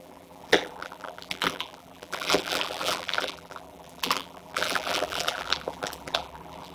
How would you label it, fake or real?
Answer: fake